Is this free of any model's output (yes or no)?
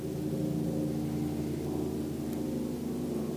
yes